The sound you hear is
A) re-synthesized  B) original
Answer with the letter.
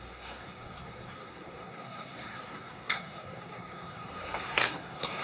A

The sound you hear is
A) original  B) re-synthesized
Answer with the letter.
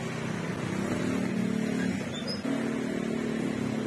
A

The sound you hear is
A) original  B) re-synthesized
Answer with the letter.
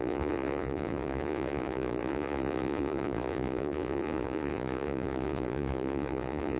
B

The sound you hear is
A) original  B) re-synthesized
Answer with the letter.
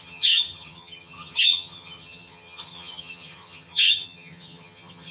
B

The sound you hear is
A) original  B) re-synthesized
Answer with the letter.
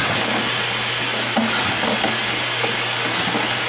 A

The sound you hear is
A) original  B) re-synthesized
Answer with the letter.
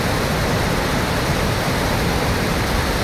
A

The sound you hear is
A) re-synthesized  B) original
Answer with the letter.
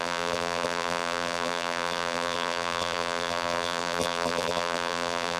A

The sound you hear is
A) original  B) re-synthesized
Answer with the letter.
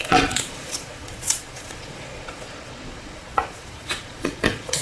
B